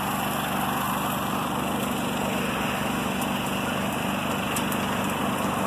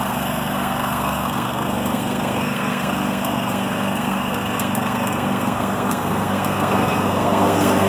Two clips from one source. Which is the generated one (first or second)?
second